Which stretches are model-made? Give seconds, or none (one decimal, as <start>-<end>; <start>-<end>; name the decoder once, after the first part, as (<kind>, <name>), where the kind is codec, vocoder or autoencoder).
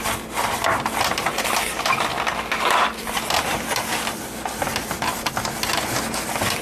none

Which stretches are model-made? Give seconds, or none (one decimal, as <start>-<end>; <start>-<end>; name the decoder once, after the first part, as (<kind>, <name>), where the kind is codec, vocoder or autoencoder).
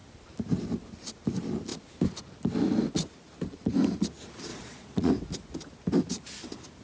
4.5-5.1 (vocoder, Vocos)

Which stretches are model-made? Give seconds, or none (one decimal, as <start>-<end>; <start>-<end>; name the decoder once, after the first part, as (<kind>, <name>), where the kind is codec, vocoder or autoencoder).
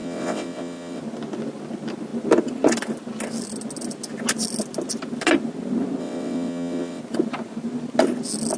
0.0-1.0 (vocoder, WaveNeXt); 6.0-7.0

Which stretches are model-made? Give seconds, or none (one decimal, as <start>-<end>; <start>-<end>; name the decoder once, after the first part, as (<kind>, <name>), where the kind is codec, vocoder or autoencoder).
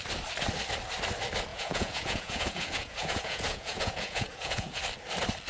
1.5-4.8 (vocoder, Vocos)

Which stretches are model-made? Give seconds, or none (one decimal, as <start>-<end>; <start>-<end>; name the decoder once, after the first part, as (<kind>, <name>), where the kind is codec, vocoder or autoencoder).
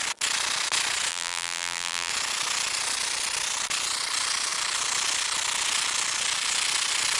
1.1-2.1 (vocoder, BigVGAN v2)